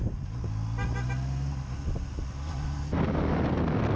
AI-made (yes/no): no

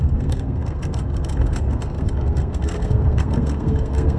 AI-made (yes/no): yes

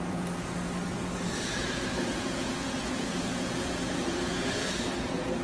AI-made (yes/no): yes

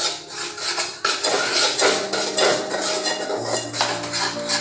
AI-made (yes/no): no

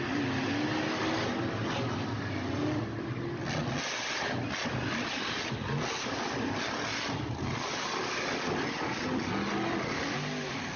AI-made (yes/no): no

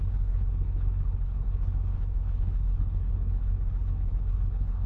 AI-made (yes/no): yes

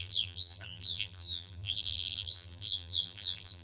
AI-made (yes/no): yes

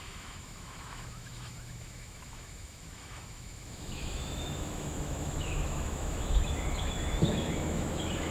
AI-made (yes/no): yes